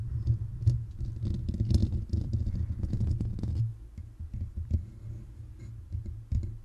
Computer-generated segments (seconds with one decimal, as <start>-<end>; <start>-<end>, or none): 1.8-3.1